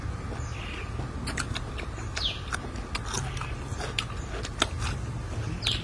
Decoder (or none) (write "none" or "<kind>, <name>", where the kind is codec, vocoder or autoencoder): none